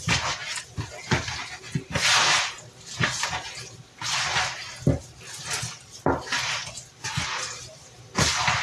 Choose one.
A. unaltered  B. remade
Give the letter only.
A